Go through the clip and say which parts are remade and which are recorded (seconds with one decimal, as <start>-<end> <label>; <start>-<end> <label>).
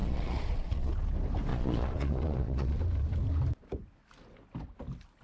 0.0-0.9 remade; 0.9-1.5 recorded; 1.5-2.8 remade; 2.8-5.2 recorded